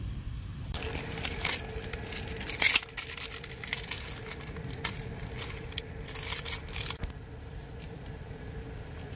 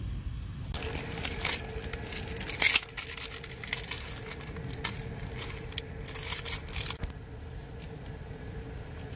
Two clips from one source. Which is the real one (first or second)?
second